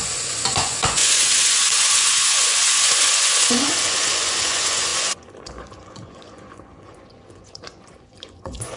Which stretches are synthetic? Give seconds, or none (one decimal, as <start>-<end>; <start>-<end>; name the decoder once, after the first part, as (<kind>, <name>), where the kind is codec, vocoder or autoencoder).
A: 0.0-8.8 (vocoder, Vocos)